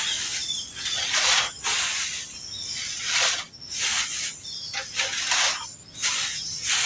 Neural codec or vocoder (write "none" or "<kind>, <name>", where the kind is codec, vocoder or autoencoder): none